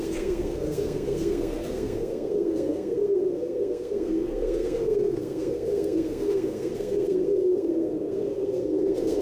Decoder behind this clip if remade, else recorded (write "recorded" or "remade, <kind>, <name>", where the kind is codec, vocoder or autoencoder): remade, codec, SNAC